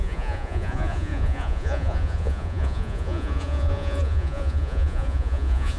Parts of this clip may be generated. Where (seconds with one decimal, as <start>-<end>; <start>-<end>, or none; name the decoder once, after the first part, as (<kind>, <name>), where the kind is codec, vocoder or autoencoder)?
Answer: 0.0-5.8 (vocoder, Vocos)

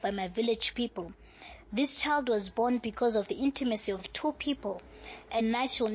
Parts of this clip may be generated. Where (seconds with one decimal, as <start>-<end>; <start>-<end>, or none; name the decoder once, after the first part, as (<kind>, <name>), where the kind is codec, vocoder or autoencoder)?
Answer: 4.0-5.4 (codec, DAC)

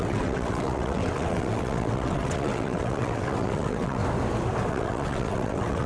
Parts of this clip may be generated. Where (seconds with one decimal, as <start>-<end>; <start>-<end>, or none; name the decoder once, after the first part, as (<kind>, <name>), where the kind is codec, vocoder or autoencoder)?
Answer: 0.0-4.0 (vocoder, WaveNeXt); 4.7-5.9

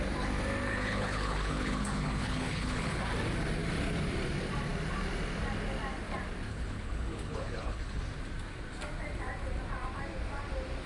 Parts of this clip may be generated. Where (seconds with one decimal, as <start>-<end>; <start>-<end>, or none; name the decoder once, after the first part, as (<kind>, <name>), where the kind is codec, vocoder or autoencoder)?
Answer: 0.7-3.0 (codec, HILCodec); 6.5-8.0